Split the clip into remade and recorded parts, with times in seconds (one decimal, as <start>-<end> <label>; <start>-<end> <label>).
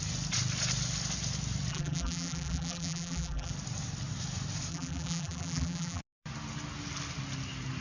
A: 0.0-1.7 recorded; 1.7-3.5 remade; 3.5-4.7 recorded; 4.7-6.0 remade; 6.0-7.8 recorded